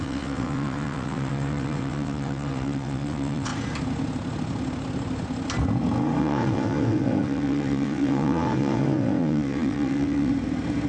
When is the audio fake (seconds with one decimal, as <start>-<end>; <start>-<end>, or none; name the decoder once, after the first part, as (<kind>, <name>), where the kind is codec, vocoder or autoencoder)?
0.0-3.5 (vocoder, WaveNeXt); 6.2-10.3